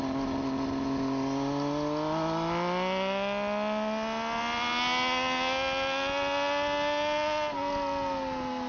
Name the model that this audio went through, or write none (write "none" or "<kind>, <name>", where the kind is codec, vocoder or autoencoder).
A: none